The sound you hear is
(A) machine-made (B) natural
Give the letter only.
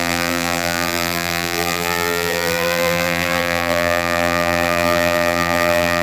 A